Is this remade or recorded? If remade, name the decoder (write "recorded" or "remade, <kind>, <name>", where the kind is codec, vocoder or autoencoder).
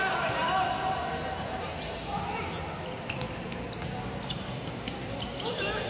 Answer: recorded